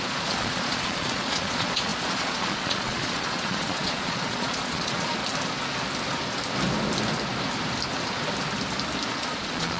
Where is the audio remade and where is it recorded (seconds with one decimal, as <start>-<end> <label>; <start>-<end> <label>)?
0.0-5.2 remade; 5.2-9.1 recorded; 9.1-9.8 remade